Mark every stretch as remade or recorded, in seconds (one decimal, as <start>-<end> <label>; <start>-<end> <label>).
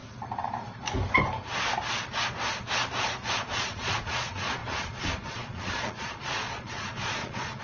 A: 0.0-3.3 recorded; 3.3-7.6 remade